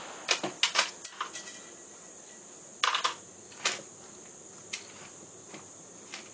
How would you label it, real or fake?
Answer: real